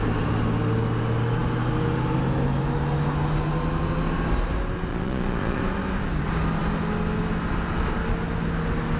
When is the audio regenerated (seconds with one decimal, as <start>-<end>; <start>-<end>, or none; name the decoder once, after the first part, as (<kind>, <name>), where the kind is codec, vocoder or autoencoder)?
4.9-5.6 (vocoder, Vocos)